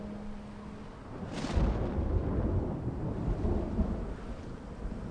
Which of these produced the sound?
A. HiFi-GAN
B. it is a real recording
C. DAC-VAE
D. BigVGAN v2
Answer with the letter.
B